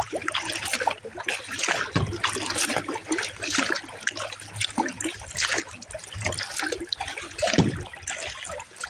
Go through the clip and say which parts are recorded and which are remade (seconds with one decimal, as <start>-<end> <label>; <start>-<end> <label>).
0.0-8.9 recorded